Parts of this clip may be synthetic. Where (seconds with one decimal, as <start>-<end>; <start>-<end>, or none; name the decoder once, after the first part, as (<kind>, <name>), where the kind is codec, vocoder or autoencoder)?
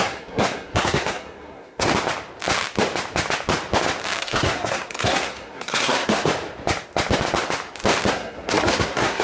0.0-1.9 (codec, SNAC); 4.2-6.3; 8.1-9.2